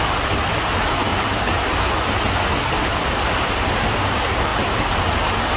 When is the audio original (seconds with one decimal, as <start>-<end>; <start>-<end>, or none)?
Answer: 0.0-5.6